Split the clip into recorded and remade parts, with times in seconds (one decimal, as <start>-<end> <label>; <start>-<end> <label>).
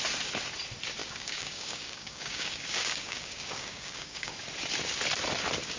0.0-1.0 recorded; 1.0-4.3 remade; 4.3-5.8 recorded